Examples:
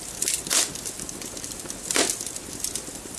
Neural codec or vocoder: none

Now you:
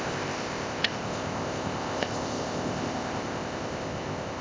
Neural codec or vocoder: codec, ZipCodec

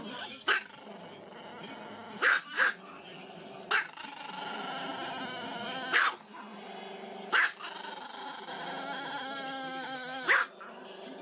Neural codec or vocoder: none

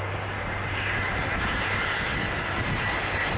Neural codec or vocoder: none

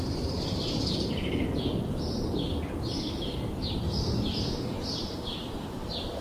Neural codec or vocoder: vocoder, BigVGAN v2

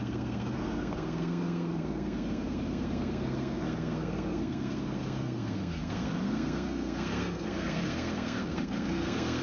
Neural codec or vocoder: codec, SNAC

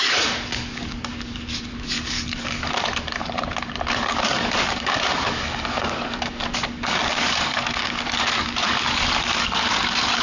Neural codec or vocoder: codec, DAC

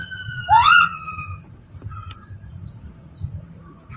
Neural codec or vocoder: vocoder, Vocos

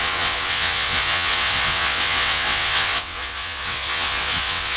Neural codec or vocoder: vocoder, WaveNeXt